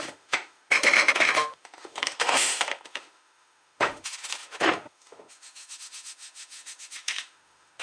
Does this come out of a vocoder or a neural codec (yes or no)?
yes